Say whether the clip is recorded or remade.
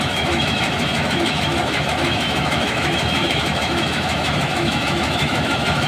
remade